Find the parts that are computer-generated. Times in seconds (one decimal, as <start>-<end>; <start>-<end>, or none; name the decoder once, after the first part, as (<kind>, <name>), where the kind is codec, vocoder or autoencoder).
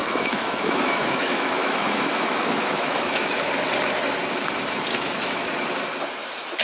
0.0-3.5 (autoencoder, DAC-VAE); 4.9-5.5